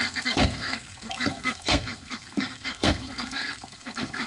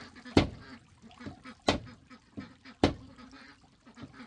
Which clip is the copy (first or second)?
first